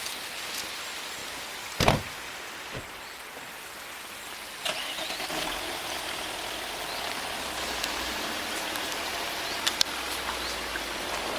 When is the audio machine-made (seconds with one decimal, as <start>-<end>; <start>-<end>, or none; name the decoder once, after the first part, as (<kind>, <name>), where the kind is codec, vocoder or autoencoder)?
none